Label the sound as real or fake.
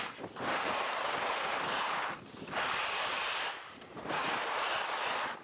real